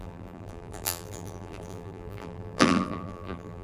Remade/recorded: remade